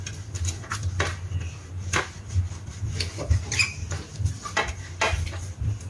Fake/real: real